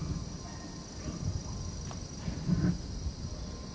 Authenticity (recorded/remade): recorded